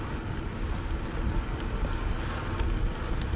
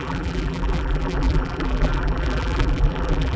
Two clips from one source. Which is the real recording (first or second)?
first